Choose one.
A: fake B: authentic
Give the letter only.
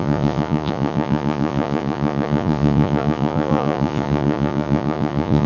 A